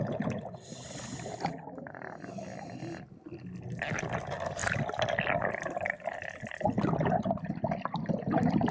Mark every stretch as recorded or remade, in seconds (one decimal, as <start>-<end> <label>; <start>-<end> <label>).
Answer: 0.0-8.7 recorded